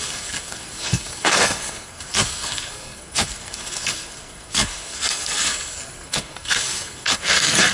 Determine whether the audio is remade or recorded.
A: remade